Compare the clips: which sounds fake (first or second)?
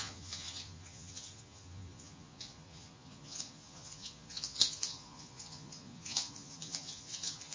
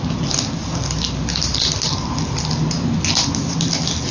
first